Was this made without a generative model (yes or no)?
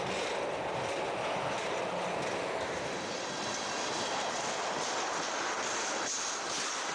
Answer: yes